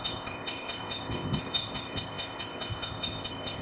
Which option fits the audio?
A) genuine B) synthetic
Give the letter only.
B